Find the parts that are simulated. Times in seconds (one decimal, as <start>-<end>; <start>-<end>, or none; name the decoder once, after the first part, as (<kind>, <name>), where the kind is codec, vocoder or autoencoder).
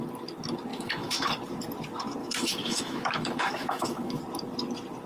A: 0.7-1.3 (autoencoder, DAC-VAE); 2.2-4.2